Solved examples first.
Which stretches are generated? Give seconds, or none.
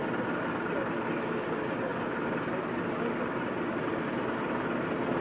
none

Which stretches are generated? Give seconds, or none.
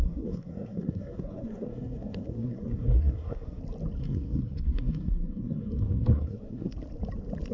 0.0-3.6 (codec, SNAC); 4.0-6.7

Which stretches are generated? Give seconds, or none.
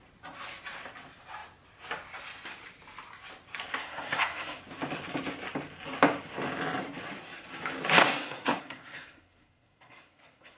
3.8-4.6 (codec, SNAC); 8.0-10.6